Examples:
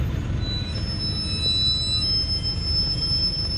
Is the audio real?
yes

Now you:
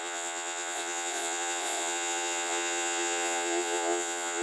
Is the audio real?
no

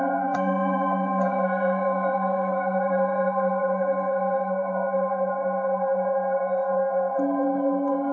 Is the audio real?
no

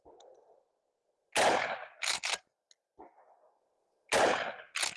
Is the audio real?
yes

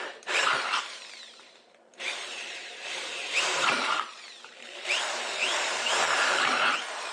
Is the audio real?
no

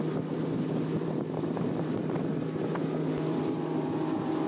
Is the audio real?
no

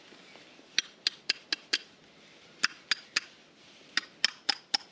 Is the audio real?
yes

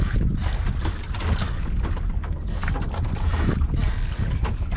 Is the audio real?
yes